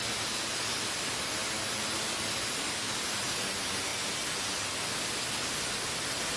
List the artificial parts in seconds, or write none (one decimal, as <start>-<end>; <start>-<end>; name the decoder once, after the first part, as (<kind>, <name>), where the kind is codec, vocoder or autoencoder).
none

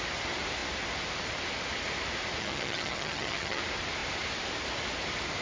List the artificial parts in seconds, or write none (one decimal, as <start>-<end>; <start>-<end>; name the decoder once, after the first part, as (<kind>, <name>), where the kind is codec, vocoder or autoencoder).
2.4-3.6 (vocoder, HiFi-GAN)